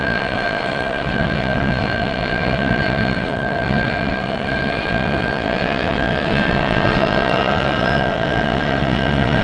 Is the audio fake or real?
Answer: fake